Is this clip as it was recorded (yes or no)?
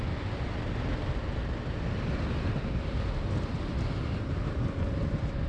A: yes